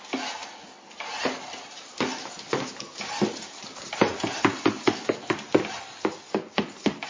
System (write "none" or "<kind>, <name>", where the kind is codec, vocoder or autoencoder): none